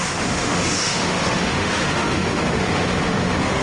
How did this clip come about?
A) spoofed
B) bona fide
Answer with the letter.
A